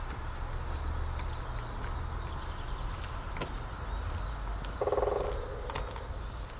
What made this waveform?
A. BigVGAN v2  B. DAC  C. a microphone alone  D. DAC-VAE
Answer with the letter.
C